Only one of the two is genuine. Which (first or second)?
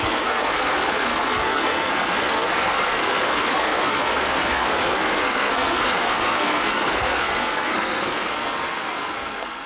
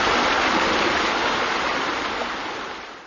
second